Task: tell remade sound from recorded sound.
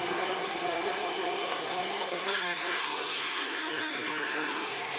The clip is remade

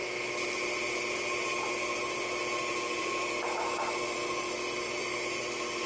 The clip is recorded